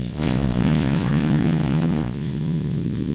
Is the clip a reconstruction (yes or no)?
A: yes